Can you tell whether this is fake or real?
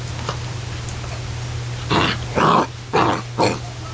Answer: real